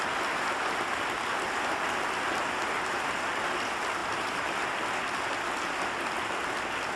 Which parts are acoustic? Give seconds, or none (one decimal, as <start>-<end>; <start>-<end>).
0.0-7.0

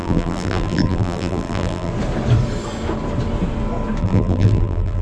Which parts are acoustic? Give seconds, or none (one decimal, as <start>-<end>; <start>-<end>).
1.9-4.0